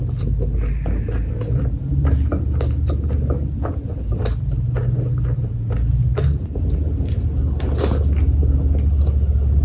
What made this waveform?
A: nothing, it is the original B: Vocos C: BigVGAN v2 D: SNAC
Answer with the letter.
A